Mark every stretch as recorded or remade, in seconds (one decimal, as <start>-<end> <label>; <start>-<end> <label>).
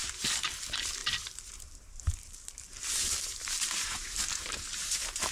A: 0.0-5.3 remade